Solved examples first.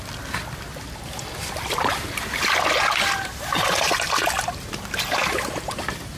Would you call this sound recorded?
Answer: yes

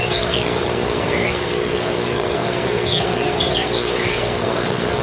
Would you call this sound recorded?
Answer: no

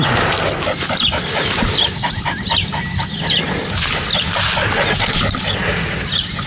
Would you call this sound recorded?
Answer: yes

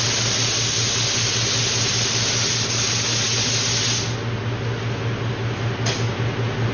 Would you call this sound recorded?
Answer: yes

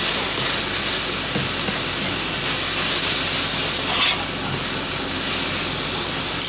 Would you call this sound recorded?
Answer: yes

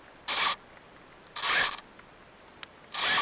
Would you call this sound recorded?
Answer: yes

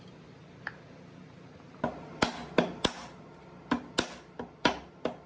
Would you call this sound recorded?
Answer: yes